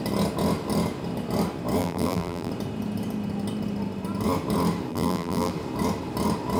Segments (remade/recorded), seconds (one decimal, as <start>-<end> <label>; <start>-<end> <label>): 0.0-1.8 recorded; 1.8-2.5 remade; 2.5-4.9 recorded; 4.9-5.5 remade; 5.5-6.6 recorded